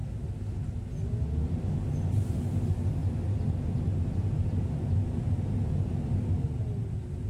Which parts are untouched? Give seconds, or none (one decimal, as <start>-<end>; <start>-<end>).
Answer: 0.0-7.3